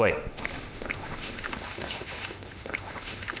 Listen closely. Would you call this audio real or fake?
fake